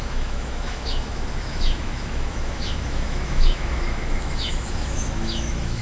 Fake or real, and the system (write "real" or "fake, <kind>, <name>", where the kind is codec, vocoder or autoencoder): fake, autoencoder, DAC-VAE